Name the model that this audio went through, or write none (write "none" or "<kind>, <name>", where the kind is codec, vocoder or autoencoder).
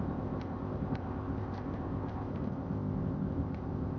codec, ZipCodec